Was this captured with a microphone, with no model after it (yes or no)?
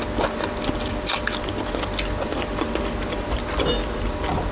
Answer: yes